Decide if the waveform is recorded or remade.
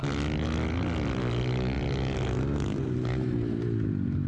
recorded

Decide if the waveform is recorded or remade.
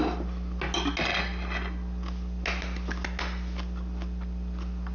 recorded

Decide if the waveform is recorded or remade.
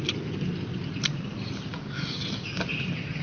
recorded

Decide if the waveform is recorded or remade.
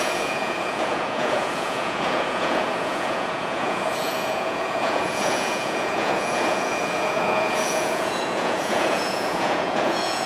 remade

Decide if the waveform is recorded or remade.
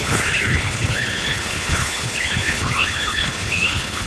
remade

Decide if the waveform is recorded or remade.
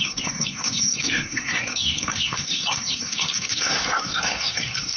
remade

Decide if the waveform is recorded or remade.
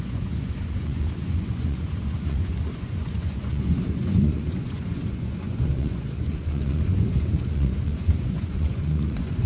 remade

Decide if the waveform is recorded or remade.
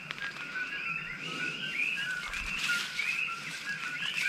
remade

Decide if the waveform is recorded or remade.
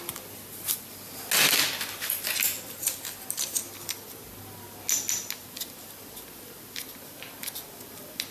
recorded